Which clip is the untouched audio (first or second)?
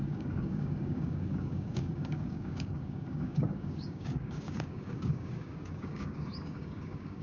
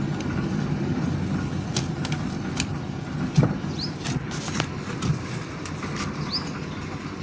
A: second